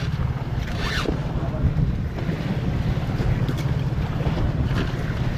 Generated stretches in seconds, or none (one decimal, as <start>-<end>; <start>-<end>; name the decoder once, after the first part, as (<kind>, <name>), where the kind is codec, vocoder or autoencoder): 0.0-1.2 (vocoder, BigVGAN v2); 3.8-5.4